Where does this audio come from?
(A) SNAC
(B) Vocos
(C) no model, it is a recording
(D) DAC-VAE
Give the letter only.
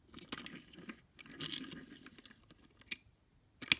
C